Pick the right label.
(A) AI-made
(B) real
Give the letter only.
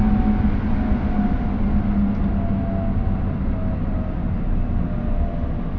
B